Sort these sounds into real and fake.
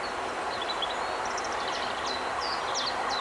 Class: real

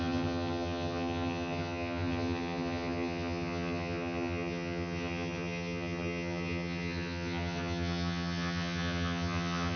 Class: fake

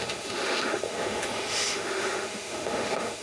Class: fake